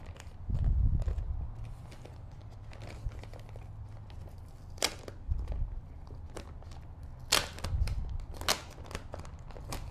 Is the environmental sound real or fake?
real